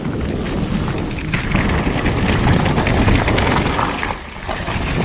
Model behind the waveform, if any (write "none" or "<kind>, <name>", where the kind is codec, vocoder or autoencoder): none